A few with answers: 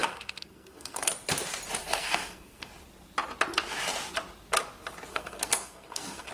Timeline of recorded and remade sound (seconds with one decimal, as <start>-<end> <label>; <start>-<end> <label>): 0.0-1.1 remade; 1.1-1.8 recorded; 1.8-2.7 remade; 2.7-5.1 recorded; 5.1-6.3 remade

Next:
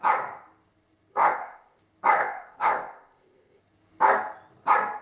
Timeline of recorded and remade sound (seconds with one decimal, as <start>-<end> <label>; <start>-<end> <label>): 0.0-1.1 recorded; 1.1-1.8 remade; 1.8-2.2 recorded; 2.2-3.6 remade; 3.6-5.0 recorded

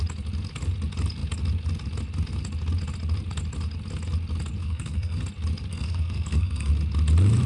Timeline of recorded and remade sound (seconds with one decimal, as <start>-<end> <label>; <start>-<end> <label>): 0.0-4.6 recorded; 4.6-5.2 remade; 5.2-5.7 recorded; 5.7-6.7 remade; 6.7-7.5 recorded

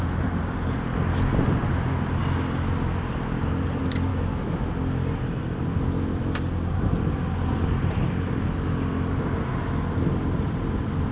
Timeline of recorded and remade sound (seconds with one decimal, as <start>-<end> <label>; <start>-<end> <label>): 0.0-4.1 recorded; 4.1-4.6 remade; 4.6-11.1 recorded

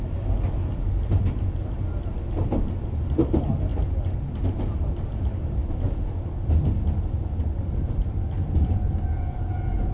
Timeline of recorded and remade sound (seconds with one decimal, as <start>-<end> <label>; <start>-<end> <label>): 0.0-9.9 recorded

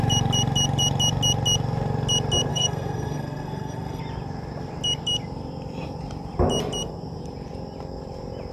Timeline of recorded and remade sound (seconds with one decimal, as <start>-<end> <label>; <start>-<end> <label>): 0.0-2.5 recorded; 2.5-4.0 remade; 4.0-8.5 recorded

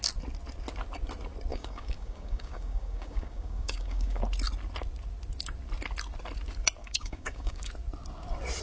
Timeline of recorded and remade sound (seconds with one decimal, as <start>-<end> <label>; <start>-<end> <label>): 0.0-1.5 recorded; 1.5-4.2 remade; 4.2-6.8 recorded; 6.8-7.7 remade; 7.7-8.6 recorded